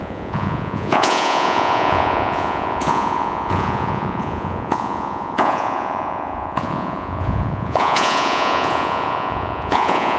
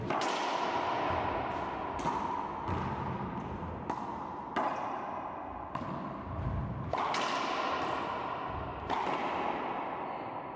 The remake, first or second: first